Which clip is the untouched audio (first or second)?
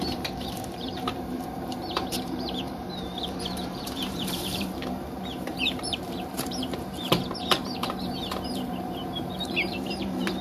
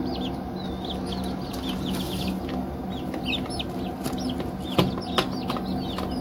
second